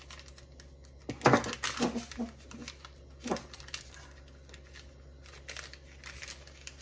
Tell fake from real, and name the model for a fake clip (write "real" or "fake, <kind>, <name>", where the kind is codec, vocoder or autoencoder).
real